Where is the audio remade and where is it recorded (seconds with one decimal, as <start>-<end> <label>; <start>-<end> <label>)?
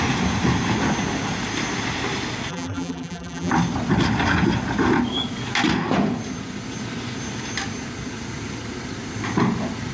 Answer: 0.0-2.5 recorded; 2.5-3.5 remade; 3.5-9.9 recorded